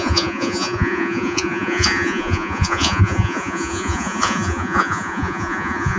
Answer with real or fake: fake